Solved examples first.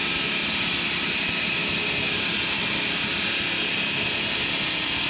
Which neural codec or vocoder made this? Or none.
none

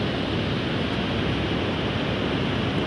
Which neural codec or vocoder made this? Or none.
none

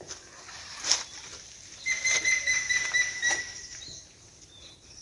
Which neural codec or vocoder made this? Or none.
vocoder, BigVGAN v2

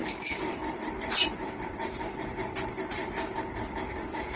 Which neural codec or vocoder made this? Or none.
none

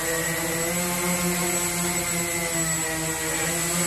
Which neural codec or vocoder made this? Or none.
none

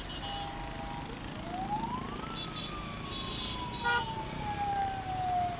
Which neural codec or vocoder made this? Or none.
none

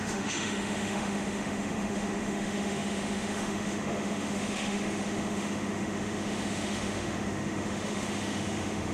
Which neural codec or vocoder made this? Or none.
autoencoder, DAC-VAE